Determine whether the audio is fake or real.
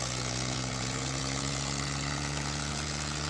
fake